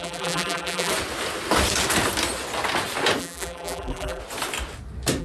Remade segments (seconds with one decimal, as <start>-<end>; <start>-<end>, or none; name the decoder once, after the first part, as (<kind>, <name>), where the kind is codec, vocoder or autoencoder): 0.0-0.9 (vocoder, BigVGAN v2); 3.2-4.2